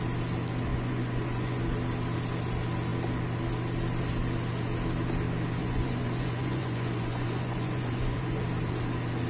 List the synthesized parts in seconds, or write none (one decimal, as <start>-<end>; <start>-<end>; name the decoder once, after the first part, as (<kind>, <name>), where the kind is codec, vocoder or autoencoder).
0.7-1.6 (vocoder, Vocos); 5.6-8.4